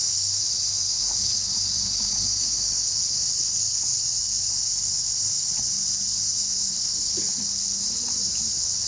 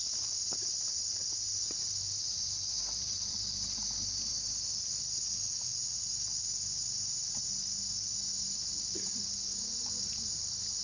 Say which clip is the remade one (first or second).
first